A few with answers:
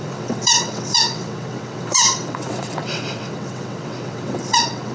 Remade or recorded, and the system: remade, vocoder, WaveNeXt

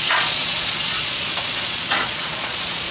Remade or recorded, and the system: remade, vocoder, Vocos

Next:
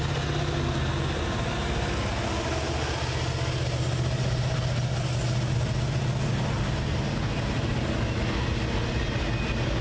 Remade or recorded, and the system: recorded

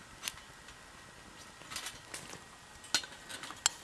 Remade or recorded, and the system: recorded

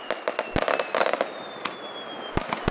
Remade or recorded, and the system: recorded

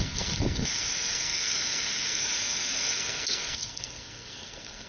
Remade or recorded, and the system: remade, codec, SNAC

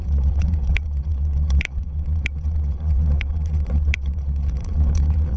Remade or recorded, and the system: remade, vocoder, WaveNeXt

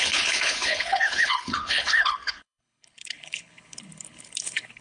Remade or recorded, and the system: remade, codec, HILCodec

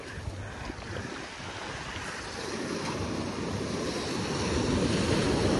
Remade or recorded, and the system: recorded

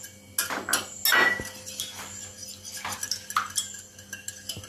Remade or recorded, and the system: recorded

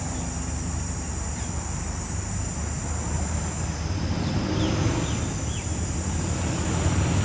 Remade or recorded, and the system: recorded